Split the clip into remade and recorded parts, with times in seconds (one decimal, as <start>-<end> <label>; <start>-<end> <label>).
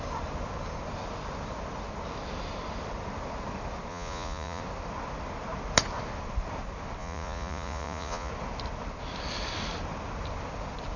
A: 0.0-3.9 recorded; 3.9-4.6 remade; 4.6-7.0 recorded; 7.0-8.3 remade; 8.3-11.0 recorded